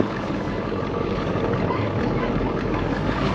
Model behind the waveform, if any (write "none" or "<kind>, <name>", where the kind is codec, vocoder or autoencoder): codec, DAC